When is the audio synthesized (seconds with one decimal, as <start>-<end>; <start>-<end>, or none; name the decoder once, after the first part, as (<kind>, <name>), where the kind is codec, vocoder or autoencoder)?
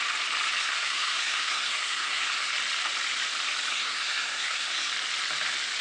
0.6-2.5 (codec, SNAC); 3.7-4.9